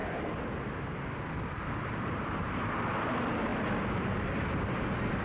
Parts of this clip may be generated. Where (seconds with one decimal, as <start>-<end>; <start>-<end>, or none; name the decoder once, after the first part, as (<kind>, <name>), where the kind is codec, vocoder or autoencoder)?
none